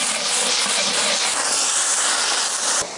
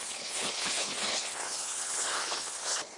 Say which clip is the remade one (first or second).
second